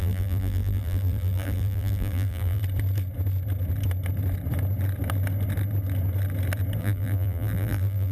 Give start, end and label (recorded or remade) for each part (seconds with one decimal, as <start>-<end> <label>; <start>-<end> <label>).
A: 0.0-2.6 remade; 2.6-6.8 recorded; 6.8-8.1 remade